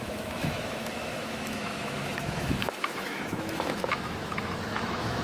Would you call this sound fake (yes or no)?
yes